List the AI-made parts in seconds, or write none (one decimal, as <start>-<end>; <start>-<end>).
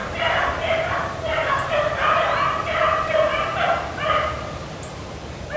0.0-0.9